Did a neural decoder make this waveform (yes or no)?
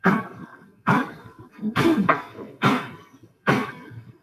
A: yes